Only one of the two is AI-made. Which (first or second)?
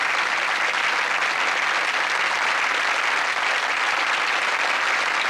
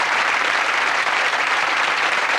second